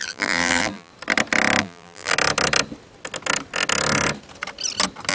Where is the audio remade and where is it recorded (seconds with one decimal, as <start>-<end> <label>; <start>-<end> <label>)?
0.0-0.9 remade; 0.9-1.6 recorded; 1.6-2.1 remade; 2.1-5.1 recorded